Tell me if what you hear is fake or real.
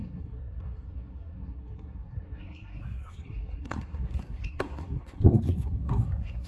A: fake